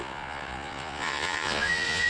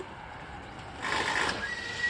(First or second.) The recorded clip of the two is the second